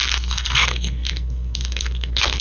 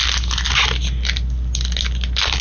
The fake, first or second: first